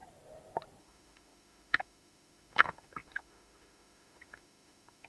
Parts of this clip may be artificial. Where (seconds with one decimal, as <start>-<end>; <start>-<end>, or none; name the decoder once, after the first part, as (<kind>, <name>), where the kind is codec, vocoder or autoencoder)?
0.8-5.1 (autoencoder, DAC-VAE)